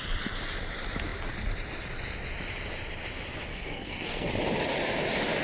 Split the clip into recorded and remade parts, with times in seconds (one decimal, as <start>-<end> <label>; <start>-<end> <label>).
0.0-3.5 recorded; 3.5-4.3 remade; 4.3-5.4 recorded